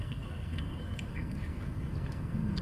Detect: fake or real fake